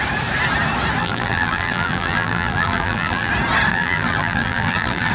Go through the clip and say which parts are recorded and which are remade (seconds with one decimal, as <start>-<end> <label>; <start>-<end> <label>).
0.0-1.0 recorded; 1.0-3.3 remade; 3.3-3.7 recorded; 3.7-5.1 remade